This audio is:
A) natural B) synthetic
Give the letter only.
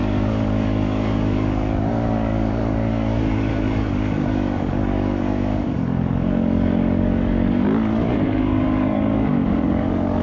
B